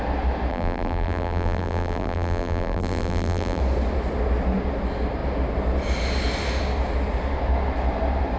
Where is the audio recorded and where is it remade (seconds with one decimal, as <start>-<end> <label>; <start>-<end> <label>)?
0.0-0.5 recorded; 0.5-3.6 remade; 3.6-8.4 recorded